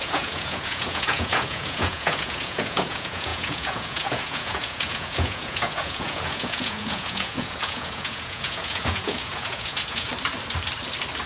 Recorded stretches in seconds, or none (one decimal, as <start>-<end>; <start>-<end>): 10.1-11.3